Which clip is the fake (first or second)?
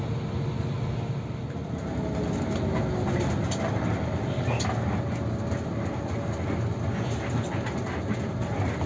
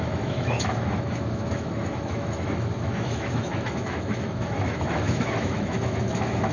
second